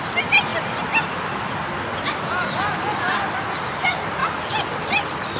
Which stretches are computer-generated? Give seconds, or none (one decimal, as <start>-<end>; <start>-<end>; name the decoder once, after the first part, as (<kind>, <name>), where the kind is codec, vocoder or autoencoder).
none